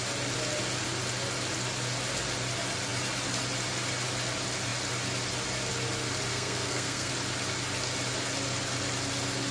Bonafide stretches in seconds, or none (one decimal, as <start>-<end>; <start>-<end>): 0.0-6.3; 7.1-9.5